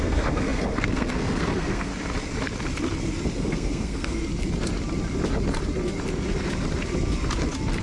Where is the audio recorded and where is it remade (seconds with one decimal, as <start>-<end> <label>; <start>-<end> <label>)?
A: 0.0-1.9 remade; 1.9-3.3 recorded; 3.3-4.2 remade; 4.2-7.8 recorded